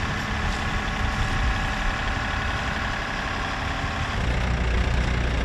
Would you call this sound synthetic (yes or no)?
no